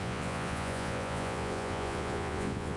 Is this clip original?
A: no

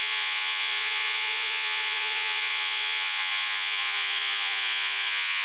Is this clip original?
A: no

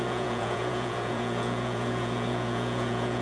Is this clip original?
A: no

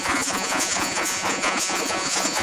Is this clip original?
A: no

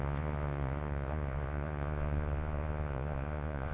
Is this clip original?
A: no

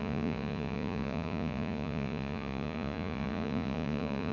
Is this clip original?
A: no